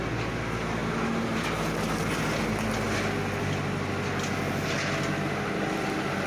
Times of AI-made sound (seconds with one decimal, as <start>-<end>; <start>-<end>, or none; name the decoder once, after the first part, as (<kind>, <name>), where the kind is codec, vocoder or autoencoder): none